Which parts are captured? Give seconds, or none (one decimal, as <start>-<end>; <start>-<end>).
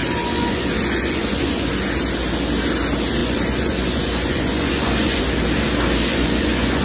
1.7-3.2; 5.2-6.1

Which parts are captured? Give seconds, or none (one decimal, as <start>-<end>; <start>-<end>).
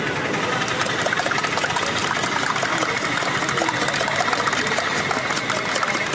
0.0-6.1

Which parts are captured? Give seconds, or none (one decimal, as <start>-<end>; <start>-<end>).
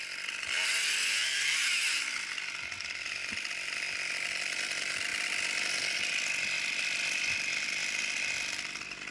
0.0-1.0; 1.6-9.1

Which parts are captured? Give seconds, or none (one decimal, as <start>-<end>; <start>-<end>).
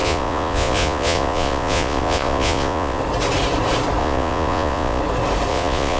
3.0-4.0; 5.0-5.5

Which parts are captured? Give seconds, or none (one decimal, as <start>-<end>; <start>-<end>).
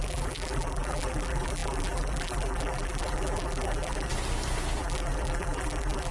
4.1-4.8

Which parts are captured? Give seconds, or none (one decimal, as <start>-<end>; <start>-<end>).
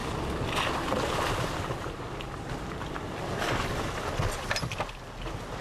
0.0-5.6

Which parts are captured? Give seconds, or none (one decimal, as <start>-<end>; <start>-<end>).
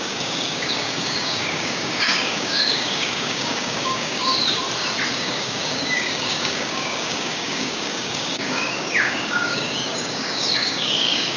4.3-5.1